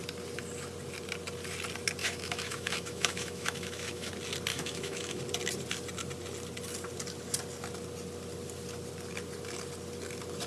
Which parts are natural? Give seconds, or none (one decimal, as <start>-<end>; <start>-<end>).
0.0-2.0; 4.1-4.5; 5.2-10.5